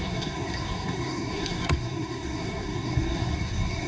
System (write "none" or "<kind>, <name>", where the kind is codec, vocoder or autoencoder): codec, SNAC